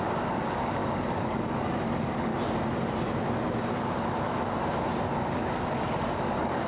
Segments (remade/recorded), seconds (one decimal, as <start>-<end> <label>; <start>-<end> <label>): 0.0-2.3 remade; 2.3-5.3 recorded; 5.3-6.7 remade